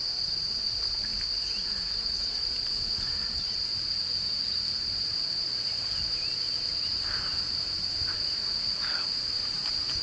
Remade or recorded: remade